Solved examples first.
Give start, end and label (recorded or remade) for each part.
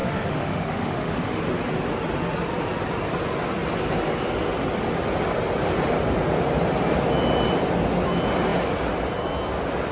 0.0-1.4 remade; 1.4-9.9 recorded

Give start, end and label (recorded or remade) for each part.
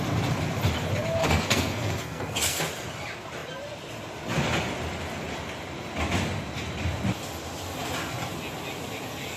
0.0-1.2 recorded; 1.2-2.6 remade; 2.6-9.4 recorded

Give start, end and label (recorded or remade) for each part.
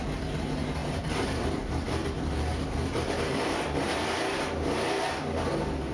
0.0-0.8 recorded; 0.8-1.7 remade; 1.7-2.5 recorded; 2.5-5.1 remade; 5.1-5.9 recorded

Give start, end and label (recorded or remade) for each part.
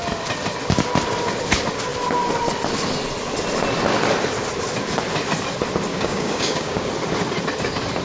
0.0-5.9 recorded; 5.9-6.9 remade; 6.9-8.0 recorded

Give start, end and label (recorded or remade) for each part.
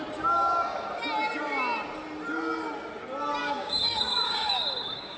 0.0-3.4 recorded; 3.4-5.2 remade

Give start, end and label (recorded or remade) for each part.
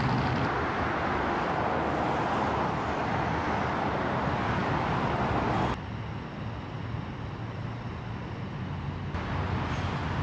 0.0-10.2 recorded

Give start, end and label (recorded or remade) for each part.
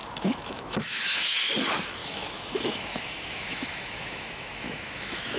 0.0-1.5 remade; 1.5-2.0 recorded; 2.0-5.4 remade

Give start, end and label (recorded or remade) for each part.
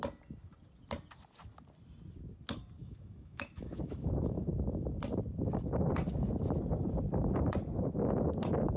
0.0-2.8 recorded; 2.8-5.0 remade; 5.0-8.8 recorded